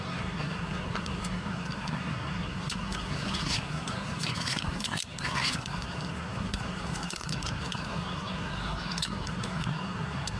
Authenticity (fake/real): fake